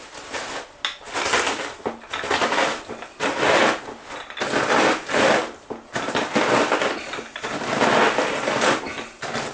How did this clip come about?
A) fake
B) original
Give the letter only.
B